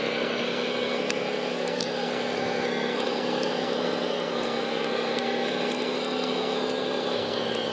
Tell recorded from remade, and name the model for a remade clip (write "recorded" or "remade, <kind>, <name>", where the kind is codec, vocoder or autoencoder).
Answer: remade, codec, SNAC